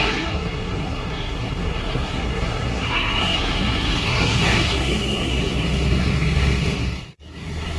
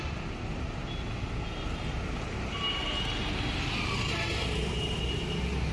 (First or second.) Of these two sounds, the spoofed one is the first